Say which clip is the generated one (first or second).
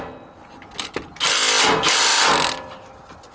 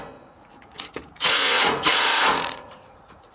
second